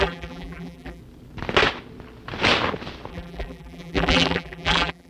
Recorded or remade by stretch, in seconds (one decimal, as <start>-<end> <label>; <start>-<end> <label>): 0.0-1.0 remade; 1.0-3.1 recorded; 3.1-5.1 remade